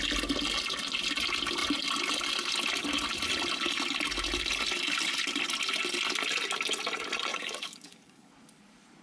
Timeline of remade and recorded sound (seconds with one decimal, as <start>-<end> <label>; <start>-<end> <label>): 0.0-7.3 recorded; 7.3-8.3 remade; 8.3-9.0 recorded

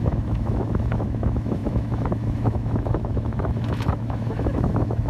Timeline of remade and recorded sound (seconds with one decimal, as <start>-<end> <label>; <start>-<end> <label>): 0.0-5.1 remade

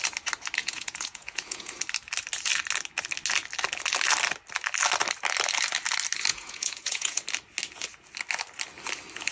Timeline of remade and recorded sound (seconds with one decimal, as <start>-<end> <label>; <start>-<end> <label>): 0.0-0.6 recorded; 0.6-1.7 remade; 1.7-6.3 recorded; 6.3-7.2 remade; 7.2-9.3 recorded

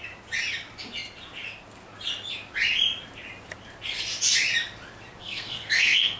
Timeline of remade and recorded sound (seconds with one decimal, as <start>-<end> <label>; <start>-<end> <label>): 0.0-5.2 recorded; 5.2-6.2 remade

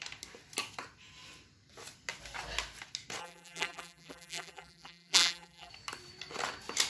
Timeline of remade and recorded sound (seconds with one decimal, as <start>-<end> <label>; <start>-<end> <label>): 0.0-3.2 recorded; 3.2-5.7 remade; 5.7-6.9 recorded

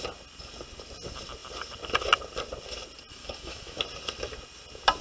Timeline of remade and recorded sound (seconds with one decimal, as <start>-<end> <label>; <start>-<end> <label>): 0.0-3.1 recorded; 3.1-3.8 remade; 3.8-5.0 recorded

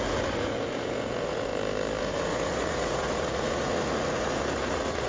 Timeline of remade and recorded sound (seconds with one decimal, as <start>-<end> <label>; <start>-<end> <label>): 0.0-1.5 remade; 1.5-2.0 recorded; 2.0-5.1 remade